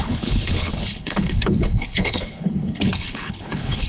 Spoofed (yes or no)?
yes